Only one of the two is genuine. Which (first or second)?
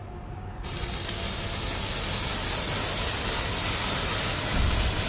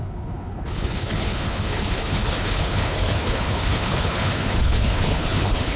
first